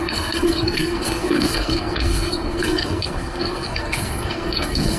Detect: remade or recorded remade